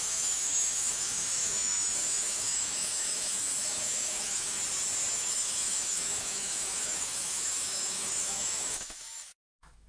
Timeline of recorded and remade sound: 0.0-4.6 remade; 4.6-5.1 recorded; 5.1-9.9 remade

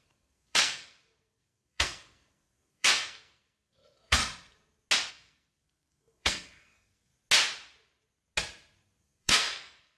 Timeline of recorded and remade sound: 0.0-4.2 remade; 4.2-5.1 recorded; 5.1-7.1 remade; 7.1-9.0 recorded; 9.0-10.0 remade

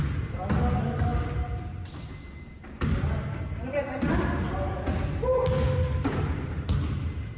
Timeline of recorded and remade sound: 0.0-6.1 recorded; 6.1-6.7 remade; 6.7-7.4 recorded